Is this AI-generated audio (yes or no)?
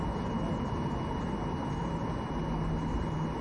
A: no